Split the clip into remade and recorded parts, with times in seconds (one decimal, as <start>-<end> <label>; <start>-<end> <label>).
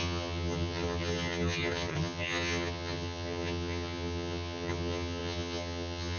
0.0-6.2 remade